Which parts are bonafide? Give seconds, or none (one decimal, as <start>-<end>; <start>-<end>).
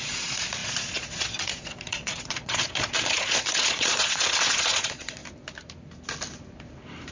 5.2-7.1